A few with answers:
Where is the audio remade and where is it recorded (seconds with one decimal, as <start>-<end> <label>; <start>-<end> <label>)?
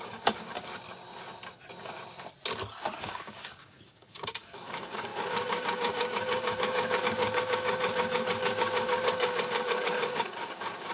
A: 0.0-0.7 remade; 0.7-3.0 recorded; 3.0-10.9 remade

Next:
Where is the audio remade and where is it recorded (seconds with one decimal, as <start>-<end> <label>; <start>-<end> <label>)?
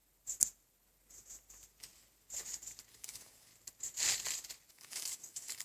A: 0.0-2.9 recorded; 2.9-3.5 remade; 3.5-4.7 recorded; 4.7-5.6 remade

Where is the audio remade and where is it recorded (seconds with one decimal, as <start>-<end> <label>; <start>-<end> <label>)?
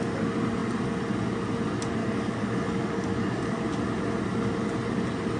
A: 0.0-2.0 recorded; 2.0-3.6 remade; 3.6-5.4 recorded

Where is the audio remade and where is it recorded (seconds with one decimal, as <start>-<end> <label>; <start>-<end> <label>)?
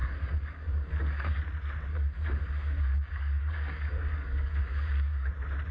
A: 0.0-1.4 remade; 1.4-1.9 recorded; 1.9-5.3 remade; 5.3-5.7 recorded